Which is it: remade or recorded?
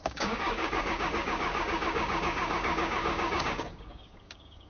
remade